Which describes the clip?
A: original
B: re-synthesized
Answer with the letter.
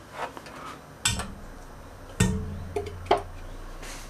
A